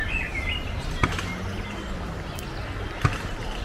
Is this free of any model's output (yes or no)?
yes